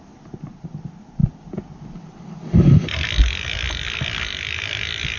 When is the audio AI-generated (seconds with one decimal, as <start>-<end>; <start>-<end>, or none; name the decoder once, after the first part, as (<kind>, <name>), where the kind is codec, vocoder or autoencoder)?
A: none